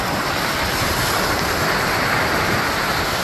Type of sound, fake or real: real